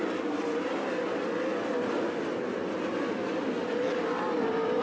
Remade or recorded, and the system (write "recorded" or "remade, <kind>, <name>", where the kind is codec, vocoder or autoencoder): recorded